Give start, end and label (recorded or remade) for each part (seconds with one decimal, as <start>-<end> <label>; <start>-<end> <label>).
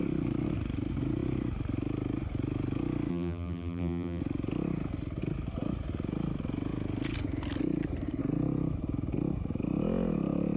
0.0-3.1 recorded; 3.1-4.2 remade; 4.2-10.6 recorded